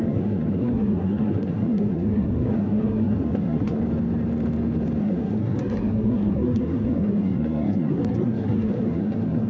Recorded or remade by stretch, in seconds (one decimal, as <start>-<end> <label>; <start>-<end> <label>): 0.0-3.8 remade; 3.8-5.0 recorded; 5.0-9.5 remade